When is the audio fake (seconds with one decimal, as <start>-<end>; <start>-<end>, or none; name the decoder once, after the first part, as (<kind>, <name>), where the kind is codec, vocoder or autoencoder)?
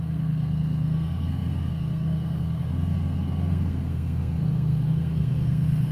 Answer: 0.0-5.9 (codec, SNAC)